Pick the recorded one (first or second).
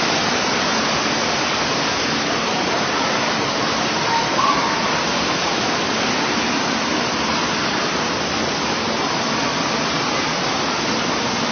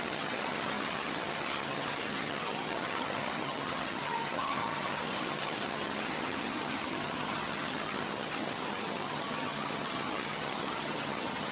first